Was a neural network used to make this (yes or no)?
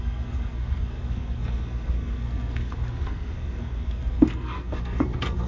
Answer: yes